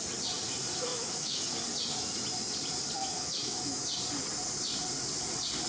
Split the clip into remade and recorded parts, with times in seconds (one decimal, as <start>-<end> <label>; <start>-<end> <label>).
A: 0.0-0.9 recorded; 0.9-1.5 remade; 1.5-3.0 recorded; 3.0-3.8 remade; 3.8-5.7 recorded